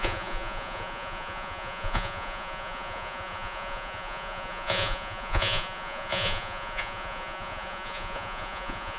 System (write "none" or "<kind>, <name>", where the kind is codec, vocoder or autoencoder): vocoder, Vocos